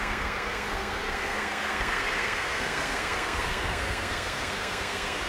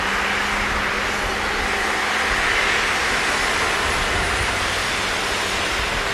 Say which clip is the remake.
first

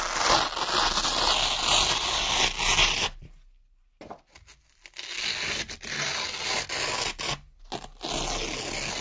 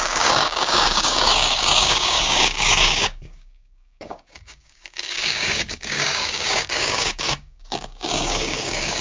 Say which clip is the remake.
second